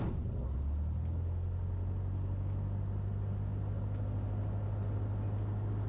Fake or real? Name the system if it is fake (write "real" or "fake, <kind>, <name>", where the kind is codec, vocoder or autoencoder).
real